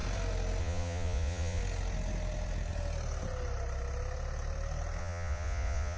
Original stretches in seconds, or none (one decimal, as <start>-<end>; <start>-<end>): 0.0-0.6; 1.6-5.0